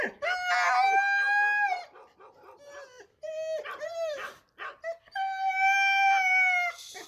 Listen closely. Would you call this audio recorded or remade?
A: recorded